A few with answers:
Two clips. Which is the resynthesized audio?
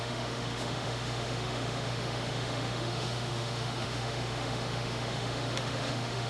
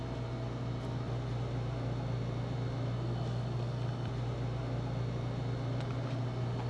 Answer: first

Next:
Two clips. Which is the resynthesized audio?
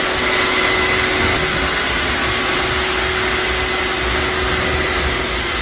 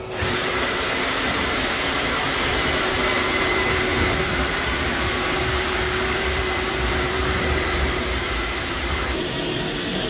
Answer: second